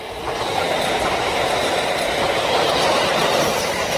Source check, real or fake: real